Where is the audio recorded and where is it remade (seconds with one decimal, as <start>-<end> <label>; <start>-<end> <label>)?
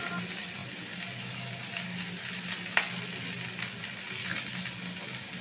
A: 0.0-5.4 recorded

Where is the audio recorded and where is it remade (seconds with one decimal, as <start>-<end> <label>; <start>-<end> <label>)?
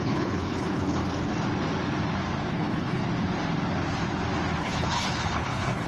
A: 0.0-1.0 remade; 1.0-2.5 recorded; 2.5-3.0 remade; 3.0-4.6 recorded; 4.6-5.9 remade